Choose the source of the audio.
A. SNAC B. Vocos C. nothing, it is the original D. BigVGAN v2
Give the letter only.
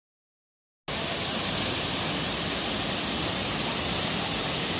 C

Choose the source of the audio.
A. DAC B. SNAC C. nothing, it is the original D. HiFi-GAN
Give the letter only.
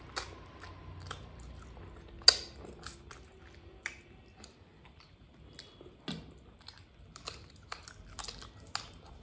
C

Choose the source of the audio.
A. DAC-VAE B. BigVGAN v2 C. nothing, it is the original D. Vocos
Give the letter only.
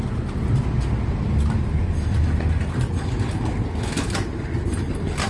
C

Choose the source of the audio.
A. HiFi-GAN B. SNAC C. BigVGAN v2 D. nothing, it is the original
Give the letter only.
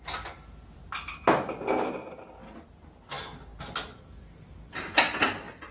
D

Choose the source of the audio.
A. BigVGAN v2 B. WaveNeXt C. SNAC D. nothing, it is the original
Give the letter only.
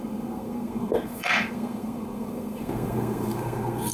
C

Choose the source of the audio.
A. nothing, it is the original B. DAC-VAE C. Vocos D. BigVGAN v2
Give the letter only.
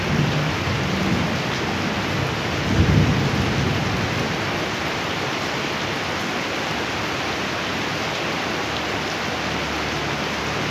A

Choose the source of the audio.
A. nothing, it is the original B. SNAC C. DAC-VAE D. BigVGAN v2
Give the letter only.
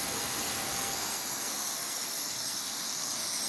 B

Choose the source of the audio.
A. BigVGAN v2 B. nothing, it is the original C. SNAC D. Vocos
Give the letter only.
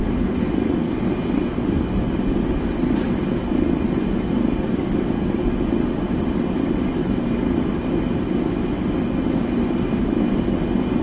B